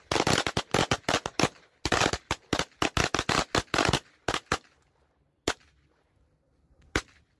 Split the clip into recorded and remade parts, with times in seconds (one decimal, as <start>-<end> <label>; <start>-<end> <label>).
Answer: 0.0-7.4 recorded